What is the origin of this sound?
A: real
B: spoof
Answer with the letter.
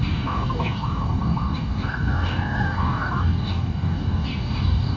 B